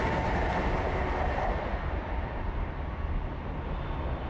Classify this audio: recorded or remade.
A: recorded